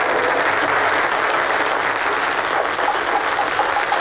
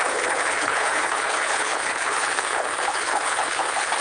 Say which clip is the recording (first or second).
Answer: first